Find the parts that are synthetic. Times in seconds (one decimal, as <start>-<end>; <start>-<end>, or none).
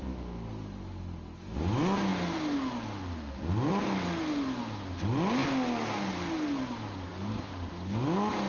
none